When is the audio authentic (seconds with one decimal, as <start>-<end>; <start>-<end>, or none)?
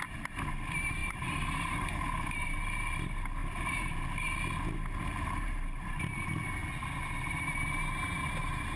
0.0-1.0; 2.6-3.4; 4.0-5.1; 5.9-8.8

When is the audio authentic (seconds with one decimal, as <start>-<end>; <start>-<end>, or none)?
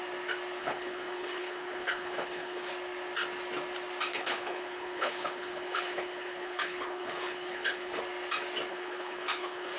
0.0-0.6; 2.7-4.1; 8.0-8.7